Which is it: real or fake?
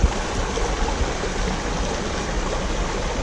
real